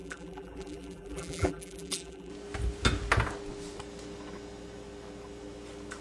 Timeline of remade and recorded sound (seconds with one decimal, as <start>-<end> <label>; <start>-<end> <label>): 0.0-2.3 remade; 2.3-6.0 recorded